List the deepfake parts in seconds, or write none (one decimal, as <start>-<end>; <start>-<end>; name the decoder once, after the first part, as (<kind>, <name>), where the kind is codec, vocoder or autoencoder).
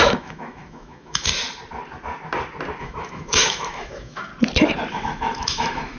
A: 0.0-1.3 (autoencoder, DAC-VAE); 2.8-4.3; 4.9-6.0